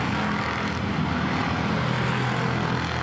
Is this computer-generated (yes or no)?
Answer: no